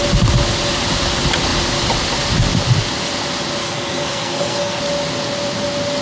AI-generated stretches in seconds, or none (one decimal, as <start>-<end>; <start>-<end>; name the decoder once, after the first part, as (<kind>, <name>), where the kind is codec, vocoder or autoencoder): 3.6-4.8 (codec, SNAC)